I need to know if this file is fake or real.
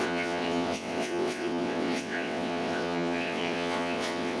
fake